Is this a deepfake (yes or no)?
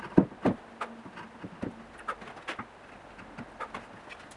no